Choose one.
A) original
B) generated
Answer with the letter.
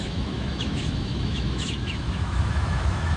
B